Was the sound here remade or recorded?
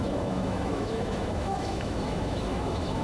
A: remade